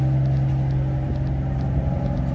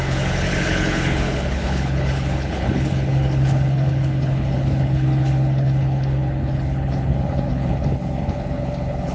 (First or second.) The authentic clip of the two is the first